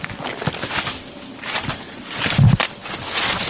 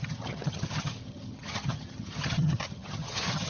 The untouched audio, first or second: first